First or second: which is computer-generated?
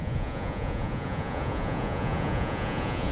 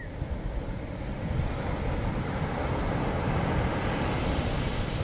first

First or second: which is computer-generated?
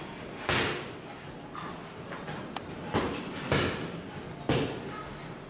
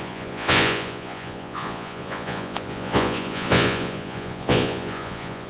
second